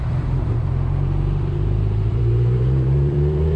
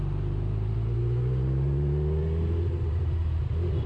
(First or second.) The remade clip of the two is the first